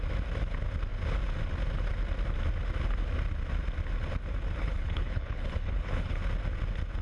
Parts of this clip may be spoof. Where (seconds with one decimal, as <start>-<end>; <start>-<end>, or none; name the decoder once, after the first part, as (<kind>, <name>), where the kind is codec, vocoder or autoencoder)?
4.6-6.2 (codec, HILCodec)